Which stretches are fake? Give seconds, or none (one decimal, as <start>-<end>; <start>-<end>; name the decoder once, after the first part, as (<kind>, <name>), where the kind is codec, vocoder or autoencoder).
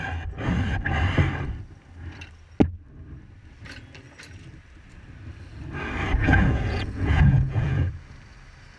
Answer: 6.2-7.9 (vocoder, Vocos)